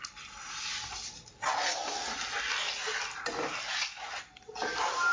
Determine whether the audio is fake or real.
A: real